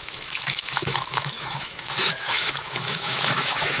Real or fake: fake